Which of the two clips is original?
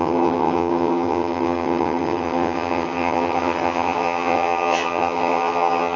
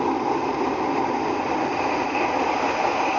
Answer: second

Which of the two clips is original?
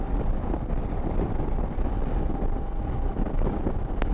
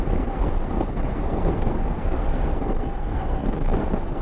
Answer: first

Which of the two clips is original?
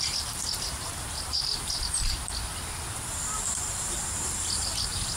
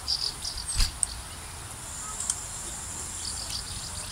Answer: second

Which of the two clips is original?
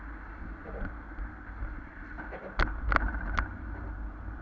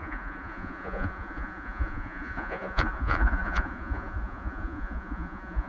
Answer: first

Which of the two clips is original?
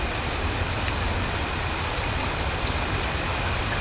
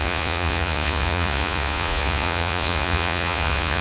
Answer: first